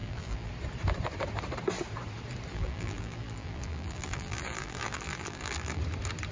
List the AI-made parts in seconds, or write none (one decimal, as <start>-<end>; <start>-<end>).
0.0-0.5; 2.5-5.8

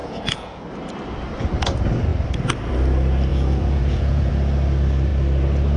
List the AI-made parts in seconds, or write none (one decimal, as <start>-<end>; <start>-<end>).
0.0-0.6; 3.3-4.3